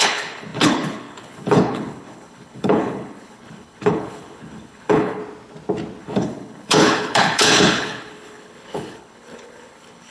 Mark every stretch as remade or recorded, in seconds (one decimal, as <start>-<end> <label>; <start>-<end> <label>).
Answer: 0.0-5.2 remade; 5.2-6.0 recorded; 6.0-10.1 remade